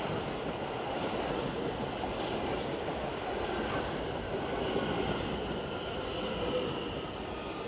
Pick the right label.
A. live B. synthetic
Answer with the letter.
A